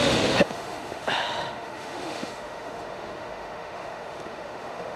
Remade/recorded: remade